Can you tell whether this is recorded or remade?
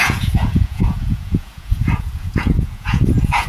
remade